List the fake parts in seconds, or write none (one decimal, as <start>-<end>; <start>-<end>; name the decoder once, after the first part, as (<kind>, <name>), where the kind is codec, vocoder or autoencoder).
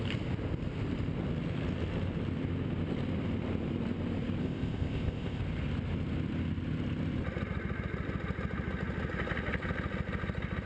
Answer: 4.4-5.4 (codec, ZipCodec)